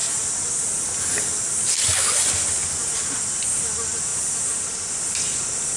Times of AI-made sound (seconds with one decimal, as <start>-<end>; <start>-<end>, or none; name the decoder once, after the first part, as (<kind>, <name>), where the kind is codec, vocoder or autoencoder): 4.1-4.9 (vocoder, BigVGAN v2)